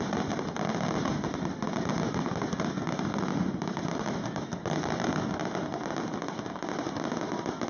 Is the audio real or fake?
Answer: real